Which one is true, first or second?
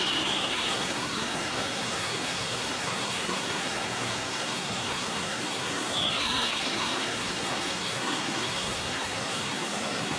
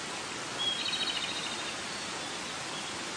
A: second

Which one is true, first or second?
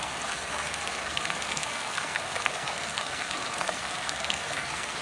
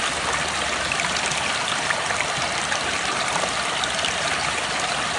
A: second